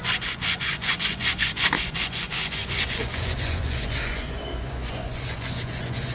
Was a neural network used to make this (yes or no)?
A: yes